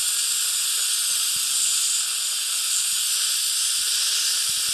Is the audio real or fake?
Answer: real